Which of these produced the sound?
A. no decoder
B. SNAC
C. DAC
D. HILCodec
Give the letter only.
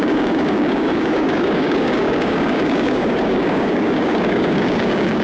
C